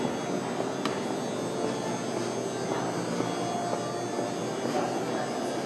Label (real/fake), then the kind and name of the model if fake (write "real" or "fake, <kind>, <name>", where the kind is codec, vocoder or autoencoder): real